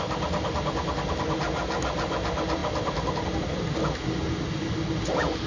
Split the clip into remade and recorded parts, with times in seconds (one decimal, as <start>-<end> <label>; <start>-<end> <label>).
0.0-5.5 recorded

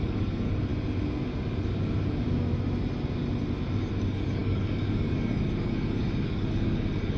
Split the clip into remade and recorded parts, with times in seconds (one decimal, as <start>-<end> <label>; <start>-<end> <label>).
0.0-0.7 remade; 0.7-3.8 recorded; 3.8-7.2 remade

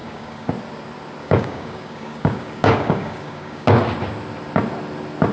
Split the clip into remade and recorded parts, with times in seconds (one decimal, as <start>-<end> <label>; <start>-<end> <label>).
0.0-0.5 remade; 0.5-1.2 recorded; 1.2-3.8 remade; 3.8-5.3 recorded

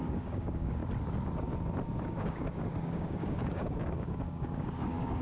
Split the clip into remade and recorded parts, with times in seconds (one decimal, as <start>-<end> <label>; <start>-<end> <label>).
0.0-0.8 remade; 0.8-2.0 recorded; 2.0-5.2 remade

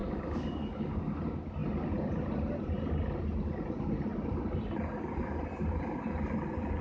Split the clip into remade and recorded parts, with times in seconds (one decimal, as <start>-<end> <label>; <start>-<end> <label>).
0.0-1.2 remade; 1.2-6.8 recorded

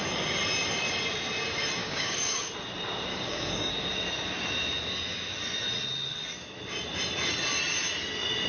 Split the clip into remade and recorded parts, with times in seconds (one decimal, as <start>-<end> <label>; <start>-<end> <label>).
0.0-1.8 recorded; 1.8-2.5 remade; 2.5-3.1 recorded; 3.1-3.7 remade; 3.7-8.5 recorded